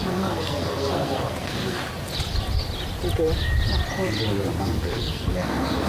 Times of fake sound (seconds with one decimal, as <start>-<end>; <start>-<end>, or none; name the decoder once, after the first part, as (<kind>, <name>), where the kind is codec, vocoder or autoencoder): 0.0-1.8 (codec, SNAC); 4.6-5.9